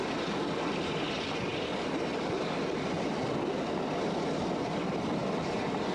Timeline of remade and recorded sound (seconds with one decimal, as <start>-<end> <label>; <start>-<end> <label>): 0.0-5.2 recorded; 5.2-5.9 remade